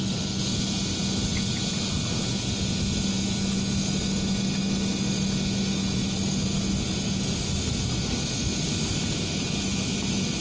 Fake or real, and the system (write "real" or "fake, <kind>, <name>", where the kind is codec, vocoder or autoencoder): real